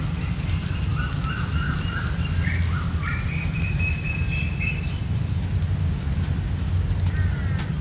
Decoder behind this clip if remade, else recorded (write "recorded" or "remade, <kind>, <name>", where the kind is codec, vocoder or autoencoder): recorded